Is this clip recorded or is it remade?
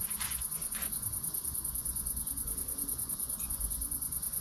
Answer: remade